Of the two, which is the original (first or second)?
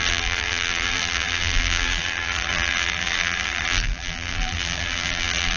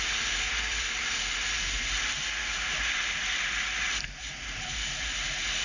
second